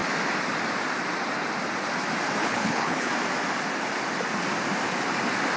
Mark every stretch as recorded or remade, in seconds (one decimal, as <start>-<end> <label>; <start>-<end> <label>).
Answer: 0.0-2.4 recorded; 2.4-3.1 remade; 3.1-5.6 recorded